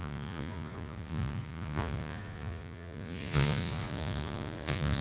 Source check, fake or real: fake